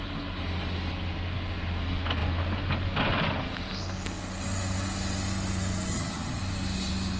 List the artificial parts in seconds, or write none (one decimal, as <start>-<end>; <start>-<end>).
5.9-6.4